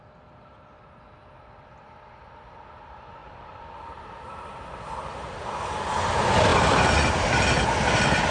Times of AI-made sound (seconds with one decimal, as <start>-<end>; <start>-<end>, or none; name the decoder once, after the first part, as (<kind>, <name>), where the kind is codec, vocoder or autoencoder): 3.2-6.1 (vocoder, BigVGAN v2)